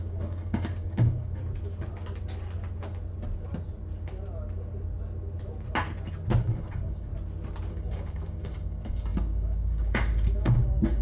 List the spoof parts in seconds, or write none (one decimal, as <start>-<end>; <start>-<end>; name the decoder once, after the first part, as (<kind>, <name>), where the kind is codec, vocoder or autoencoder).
0.0-1.4 (codec, DAC); 6.4-7.1; 7.7-11.0